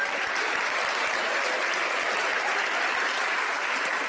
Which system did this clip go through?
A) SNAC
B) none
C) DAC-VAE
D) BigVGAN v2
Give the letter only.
B